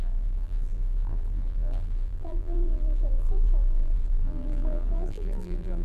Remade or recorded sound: remade